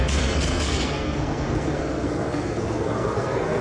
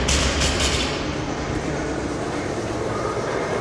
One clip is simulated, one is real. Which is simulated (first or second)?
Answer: first